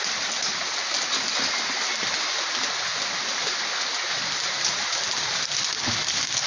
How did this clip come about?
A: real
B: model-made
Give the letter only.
A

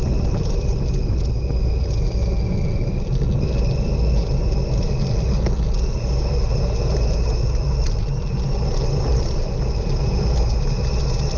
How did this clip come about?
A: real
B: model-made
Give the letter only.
A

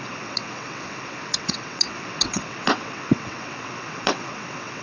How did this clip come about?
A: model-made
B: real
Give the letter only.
A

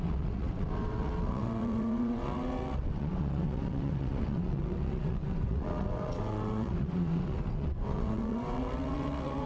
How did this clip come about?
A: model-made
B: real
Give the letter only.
A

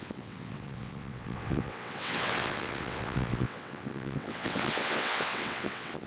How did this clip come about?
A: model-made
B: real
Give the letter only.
A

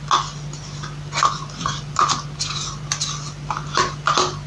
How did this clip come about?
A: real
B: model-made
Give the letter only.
A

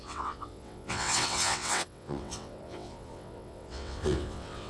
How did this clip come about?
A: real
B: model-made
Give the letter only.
B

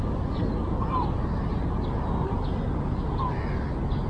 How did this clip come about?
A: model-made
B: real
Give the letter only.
B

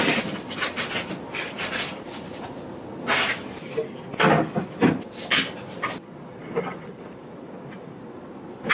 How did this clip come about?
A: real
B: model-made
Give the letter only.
A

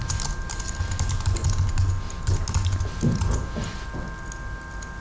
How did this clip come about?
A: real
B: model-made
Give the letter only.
A